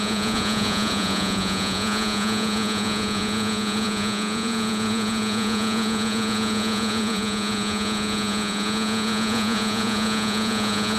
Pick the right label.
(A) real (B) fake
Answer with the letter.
B